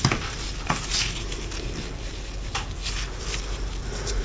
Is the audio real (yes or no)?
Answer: yes